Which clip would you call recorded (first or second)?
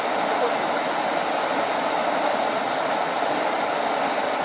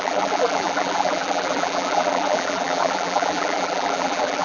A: first